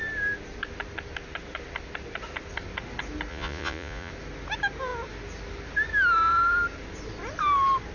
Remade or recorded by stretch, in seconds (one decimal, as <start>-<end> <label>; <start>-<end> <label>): 0.0-3.3 recorded; 3.3-4.1 remade; 4.1-7.9 recorded